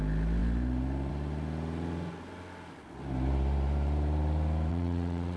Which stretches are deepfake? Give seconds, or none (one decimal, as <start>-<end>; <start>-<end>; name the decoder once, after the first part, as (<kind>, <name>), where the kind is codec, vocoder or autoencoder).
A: 4.7-5.4 (vocoder, WaveNeXt)